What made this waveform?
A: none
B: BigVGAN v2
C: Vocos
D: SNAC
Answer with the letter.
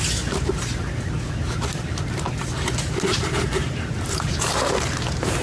A